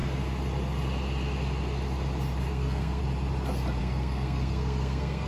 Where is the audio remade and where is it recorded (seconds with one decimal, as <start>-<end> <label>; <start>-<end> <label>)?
0.0-2.5 recorded; 2.5-3.0 remade; 3.0-3.8 recorded; 3.8-5.3 remade